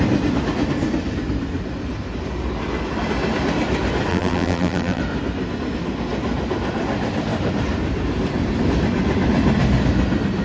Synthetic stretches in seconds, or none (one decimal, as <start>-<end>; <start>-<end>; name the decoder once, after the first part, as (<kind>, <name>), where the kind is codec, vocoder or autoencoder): 4.1-5.0 (vocoder, BigVGAN v2)